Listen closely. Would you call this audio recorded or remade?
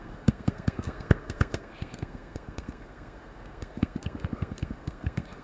remade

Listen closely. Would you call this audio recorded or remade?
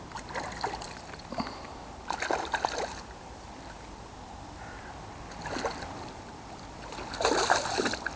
recorded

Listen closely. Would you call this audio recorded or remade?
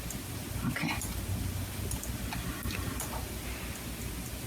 recorded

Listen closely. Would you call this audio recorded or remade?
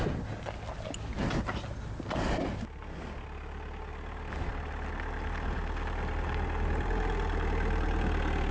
recorded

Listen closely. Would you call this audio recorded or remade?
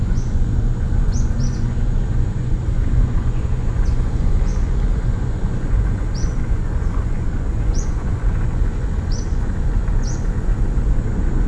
remade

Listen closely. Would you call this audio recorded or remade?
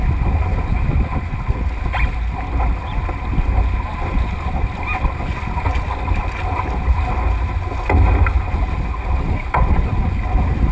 recorded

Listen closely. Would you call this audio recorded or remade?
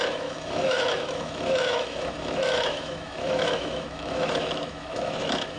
remade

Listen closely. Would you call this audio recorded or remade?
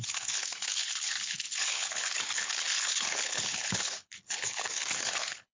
remade